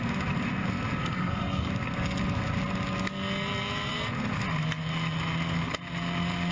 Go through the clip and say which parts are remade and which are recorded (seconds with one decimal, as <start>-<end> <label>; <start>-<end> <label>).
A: 0.0-1.0 recorded; 1.0-1.7 remade; 1.7-6.5 recorded